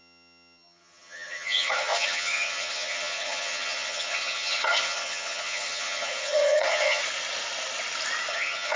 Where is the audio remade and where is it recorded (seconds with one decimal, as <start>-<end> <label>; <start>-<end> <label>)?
0.0-7.0 remade; 7.0-8.3 recorded; 8.3-8.8 remade